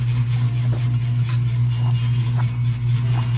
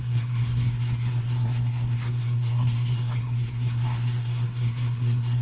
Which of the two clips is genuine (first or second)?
first